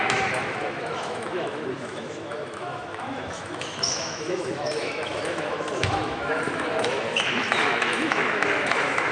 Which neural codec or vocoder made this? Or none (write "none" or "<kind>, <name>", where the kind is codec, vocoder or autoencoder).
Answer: autoencoder, DAC-VAE